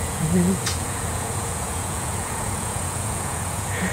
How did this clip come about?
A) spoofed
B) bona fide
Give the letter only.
A